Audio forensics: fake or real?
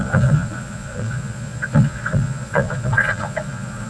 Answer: fake